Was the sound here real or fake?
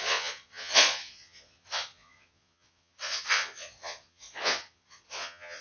fake